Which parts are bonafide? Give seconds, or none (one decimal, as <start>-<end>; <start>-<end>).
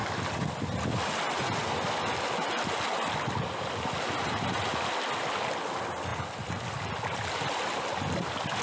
0.0-8.6